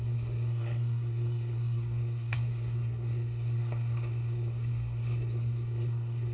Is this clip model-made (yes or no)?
yes